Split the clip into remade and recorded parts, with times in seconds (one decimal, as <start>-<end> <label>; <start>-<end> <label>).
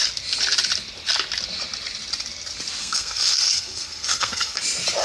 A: 0.0-2.8 recorded; 2.8-4.6 remade; 4.6-5.0 recorded